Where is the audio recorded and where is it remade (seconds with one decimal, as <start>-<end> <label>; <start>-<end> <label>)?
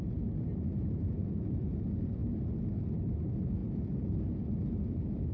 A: 0.0-5.3 recorded